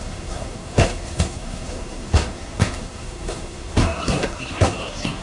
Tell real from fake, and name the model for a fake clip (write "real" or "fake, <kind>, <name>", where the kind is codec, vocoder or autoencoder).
fake, codec, SNAC